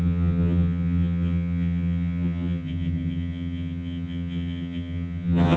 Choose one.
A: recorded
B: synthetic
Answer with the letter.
B